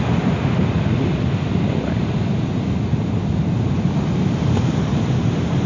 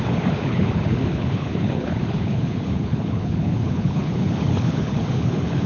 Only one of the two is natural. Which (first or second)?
first